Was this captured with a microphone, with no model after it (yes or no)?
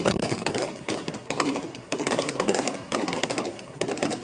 no